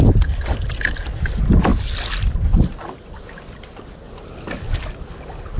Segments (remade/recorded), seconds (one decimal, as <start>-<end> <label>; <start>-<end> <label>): 0.0-5.6 recorded